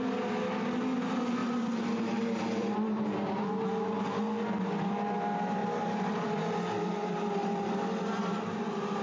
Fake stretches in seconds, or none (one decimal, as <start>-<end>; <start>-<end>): 1.4-3.5; 5.6-8.6